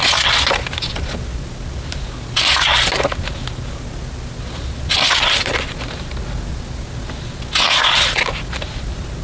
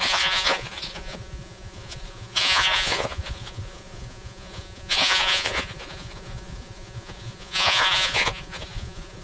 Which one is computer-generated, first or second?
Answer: second